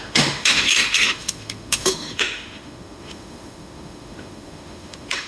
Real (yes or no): no